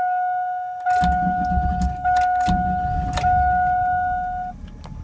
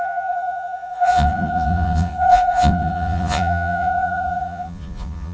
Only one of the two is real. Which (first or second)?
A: first